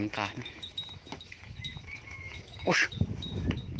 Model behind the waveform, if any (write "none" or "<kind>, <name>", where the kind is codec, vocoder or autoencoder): autoencoder, DAC-VAE